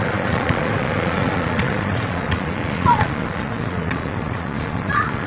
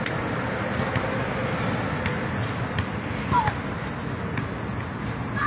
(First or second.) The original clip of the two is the second